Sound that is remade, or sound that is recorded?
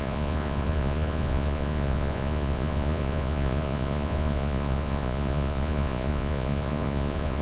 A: remade